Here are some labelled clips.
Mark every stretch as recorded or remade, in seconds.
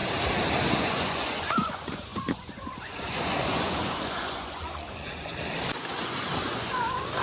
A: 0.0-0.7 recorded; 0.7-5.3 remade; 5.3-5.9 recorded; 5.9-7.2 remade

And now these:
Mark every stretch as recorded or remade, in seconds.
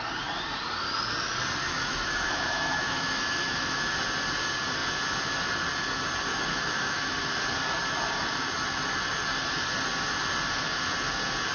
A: 0.0-1.6 recorded; 1.6-3.9 remade; 3.9-6.3 recorded; 6.3-7.4 remade; 7.4-11.5 recorded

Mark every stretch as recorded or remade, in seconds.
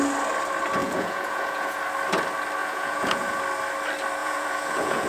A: 0.0-0.8 recorded; 0.8-1.8 remade; 1.8-2.6 recorded; 2.6-3.4 remade; 3.4-4.2 recorded; 4.2-5.1 remade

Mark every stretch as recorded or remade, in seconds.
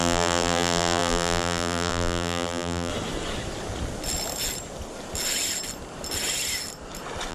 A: 0.0-2.9 remade; 2.9-7.3 recorded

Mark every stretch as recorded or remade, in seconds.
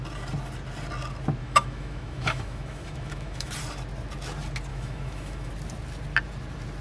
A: 0.0-1.4 recorded; 1.4-3.5 remade; 3.5-4.7 recorded; 4.7-5.5 remade; 5.5-6.8 recorded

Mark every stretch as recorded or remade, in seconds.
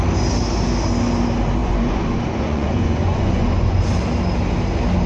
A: 0.0-1.6 recorded; 1.6-3.8 remade; 3.8-5.1 recorded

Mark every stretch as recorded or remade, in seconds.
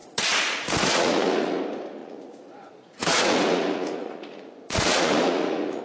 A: 0.0-1.6 remade; 1.6-2.0 recorded; 2.0-5.8 remade